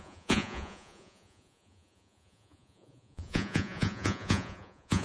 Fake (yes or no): yes